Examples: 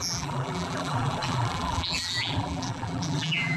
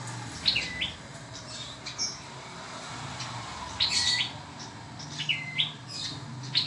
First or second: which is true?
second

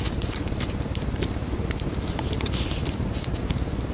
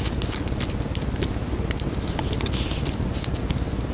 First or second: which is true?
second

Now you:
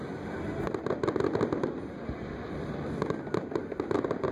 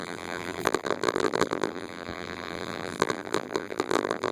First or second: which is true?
first